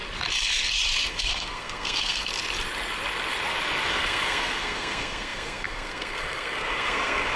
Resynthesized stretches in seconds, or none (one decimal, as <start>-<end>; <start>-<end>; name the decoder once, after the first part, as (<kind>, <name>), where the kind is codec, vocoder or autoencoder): 1.1-2.3 (codec, SNAC); 3.9-7.4